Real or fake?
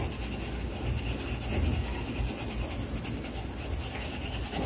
real